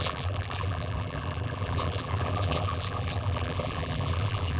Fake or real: fake